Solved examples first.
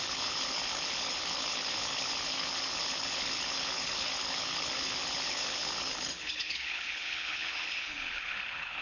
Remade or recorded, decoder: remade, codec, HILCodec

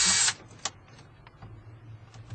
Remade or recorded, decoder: recorded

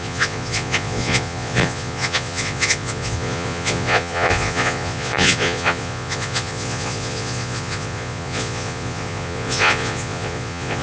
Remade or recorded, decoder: remade, vocoder, Vocos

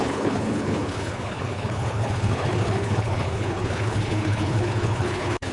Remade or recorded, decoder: remade, codec, HILCodec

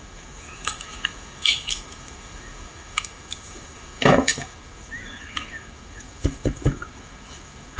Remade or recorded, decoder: remade, autoencoder, DAC-VAE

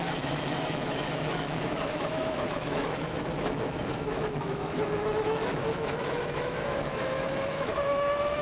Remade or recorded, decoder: remade, autoencoder, DAC-VAE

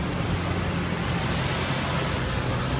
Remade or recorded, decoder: recorded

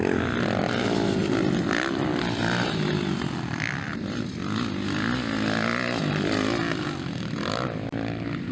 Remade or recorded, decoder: recorded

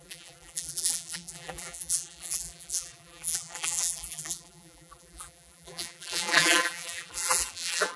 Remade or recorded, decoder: remade, vocoder, BigVGAN v2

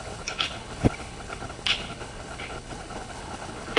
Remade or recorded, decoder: remade, codec, HILCodec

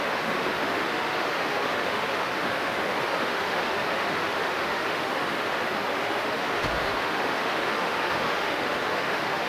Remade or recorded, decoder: remade, autoencoder, DAC-VAE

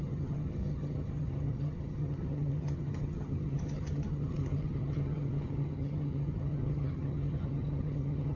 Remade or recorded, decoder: remade, vocoder, HiFi-GAN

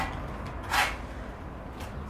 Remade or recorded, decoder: recorded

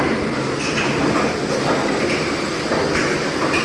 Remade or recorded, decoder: recorded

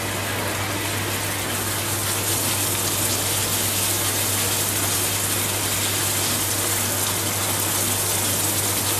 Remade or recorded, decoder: recorded